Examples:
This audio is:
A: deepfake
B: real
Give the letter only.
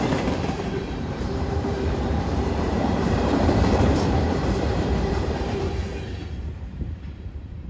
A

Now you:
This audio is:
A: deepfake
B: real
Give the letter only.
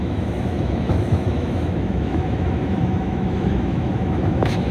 A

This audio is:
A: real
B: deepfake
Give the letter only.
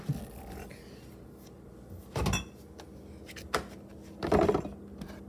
A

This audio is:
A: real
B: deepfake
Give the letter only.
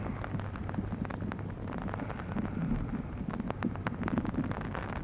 A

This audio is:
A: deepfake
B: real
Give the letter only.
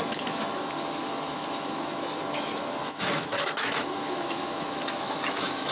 A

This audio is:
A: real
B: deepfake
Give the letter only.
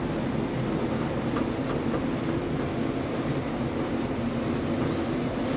A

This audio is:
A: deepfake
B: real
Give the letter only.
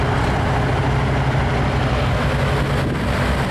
B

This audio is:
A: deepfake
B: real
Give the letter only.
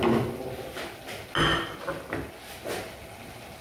B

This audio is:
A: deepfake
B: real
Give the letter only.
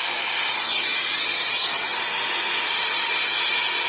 B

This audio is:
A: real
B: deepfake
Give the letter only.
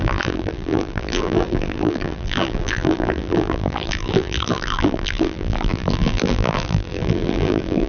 B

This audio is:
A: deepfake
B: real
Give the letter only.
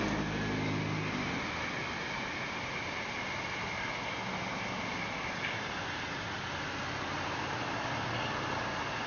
B